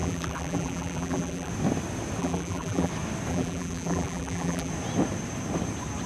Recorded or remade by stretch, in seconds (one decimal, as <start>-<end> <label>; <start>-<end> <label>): 0.0-1.5 remade; 1.5-2.2 recorded; 2.2-2.9 remade; 2.9-3.3 recorded; 3.3-4.7 remade; 4.7-6.1 recorded